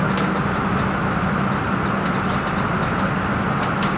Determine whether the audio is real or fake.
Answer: real